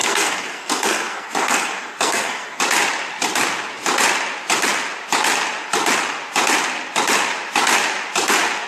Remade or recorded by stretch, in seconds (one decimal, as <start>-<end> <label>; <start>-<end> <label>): 0.0-2.6 remade; 2.6-8.7 recorded